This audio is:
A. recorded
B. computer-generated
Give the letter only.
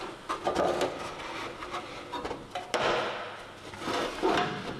A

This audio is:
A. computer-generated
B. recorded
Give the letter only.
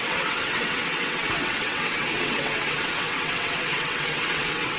A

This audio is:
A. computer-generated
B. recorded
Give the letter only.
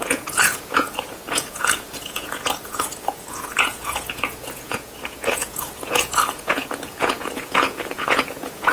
A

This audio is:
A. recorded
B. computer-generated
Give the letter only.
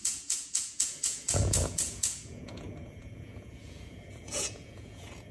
B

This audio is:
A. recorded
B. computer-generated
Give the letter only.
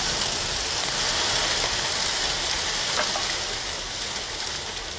A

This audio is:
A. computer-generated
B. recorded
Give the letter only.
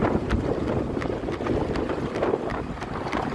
B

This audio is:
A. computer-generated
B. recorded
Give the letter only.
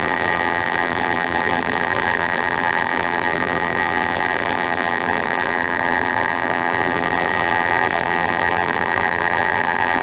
A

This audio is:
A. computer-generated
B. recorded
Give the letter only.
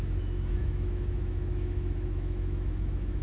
A